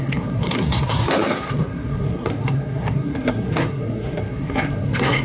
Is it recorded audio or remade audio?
remade